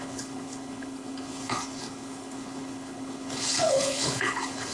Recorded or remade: remade